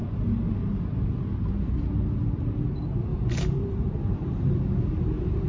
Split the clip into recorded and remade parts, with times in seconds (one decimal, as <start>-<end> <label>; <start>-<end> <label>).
0.0-3.1 recorded; 3.1-5.5 remade